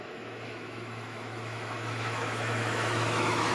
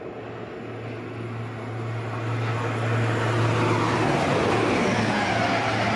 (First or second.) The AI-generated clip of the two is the first